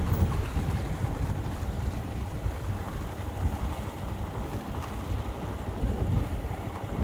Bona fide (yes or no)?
yes